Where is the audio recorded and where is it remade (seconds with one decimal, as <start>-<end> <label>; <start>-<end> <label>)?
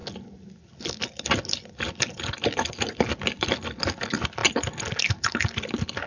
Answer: 0.0-6.1 recorded